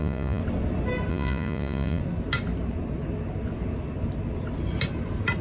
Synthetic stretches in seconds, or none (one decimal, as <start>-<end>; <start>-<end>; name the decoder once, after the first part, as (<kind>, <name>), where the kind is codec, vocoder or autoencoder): 0.0-0.4 (vocoder, Vocos); 1.1-2.0